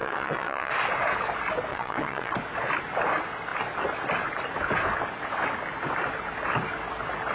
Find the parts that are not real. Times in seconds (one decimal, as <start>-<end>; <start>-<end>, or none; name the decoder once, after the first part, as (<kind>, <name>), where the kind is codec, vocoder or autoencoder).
0.0-0.7 (vocoder, WaveNeXt); 1.7-2.3